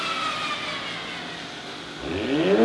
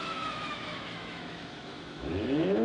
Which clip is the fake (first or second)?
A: second